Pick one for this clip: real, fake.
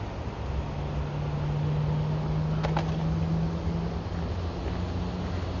real